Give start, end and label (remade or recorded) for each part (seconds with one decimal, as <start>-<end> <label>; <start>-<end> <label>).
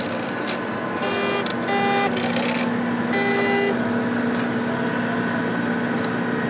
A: 0.0-6.5 recorded